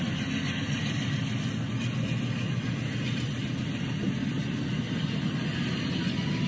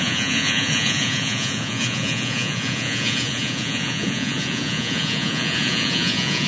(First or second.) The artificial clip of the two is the second